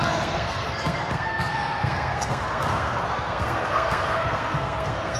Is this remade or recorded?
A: remade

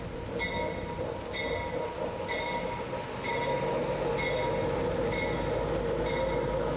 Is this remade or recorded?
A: recorded